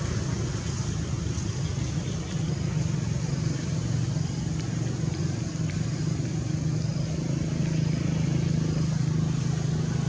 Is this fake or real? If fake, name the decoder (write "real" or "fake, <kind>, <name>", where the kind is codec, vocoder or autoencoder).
real